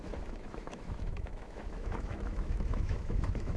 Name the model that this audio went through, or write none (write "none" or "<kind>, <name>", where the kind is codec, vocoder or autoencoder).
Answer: autoencoder, DAC-VAE